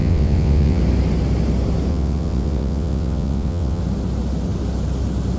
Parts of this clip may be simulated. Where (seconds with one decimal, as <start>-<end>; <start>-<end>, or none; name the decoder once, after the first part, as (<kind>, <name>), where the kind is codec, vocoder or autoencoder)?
0.0-0.8 (vocoder, WaveNeXt); 1.9-3.8